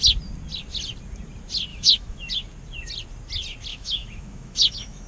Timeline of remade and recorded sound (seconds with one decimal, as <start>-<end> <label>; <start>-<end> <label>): 0.0-1.7 recorded; 1.7-2.3 remade; 2.3-3.7 recorded; 3.7-5.1 remade